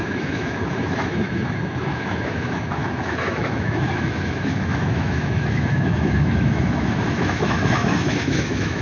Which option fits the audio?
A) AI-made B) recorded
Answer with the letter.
A